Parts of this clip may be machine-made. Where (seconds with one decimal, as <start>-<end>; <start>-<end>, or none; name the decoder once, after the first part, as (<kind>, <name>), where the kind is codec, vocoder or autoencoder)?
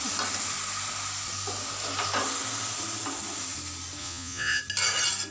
4.0-4.6 (vocoder, Vocos)